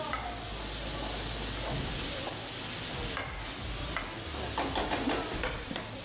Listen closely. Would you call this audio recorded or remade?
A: recorded